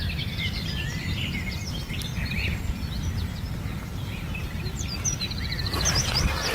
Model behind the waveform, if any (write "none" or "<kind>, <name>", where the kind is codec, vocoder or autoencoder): none